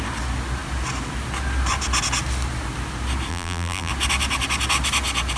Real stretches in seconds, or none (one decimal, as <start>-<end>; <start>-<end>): 0.0-3.3; 3.9-5.4